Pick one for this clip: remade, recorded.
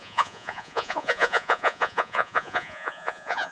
remade